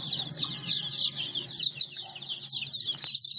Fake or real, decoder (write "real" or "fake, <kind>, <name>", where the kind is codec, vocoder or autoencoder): real